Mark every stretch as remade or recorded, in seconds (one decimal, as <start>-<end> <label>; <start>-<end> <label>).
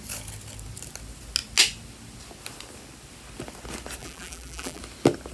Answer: 0.0-4.0 recorded; 4.0-4.8 remade; 4.8-5.3 recorded